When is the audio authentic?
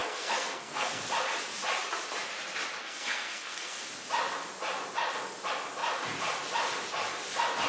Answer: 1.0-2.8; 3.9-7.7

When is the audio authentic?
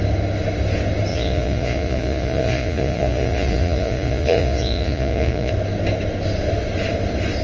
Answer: 0.0-1.1; 5.5-7.4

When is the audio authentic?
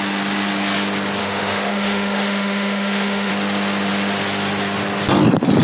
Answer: 0.0-1.2; 3.3-5.6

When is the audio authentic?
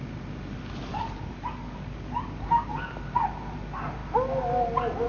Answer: 0.0-0.9; 2.9-5.1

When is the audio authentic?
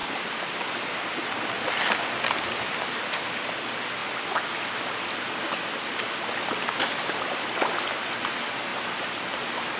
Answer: 1.4-4.0; 7.6-8.7; 9.3-9.8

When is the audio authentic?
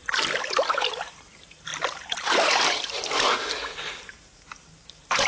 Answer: 0.0-0.7; 1.7-3.7